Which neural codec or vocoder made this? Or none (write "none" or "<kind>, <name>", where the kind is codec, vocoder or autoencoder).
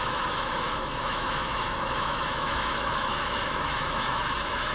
autoencoder, DAC-VAE